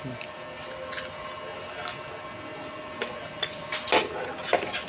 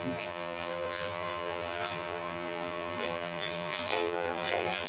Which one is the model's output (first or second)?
second